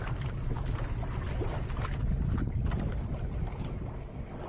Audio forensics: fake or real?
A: real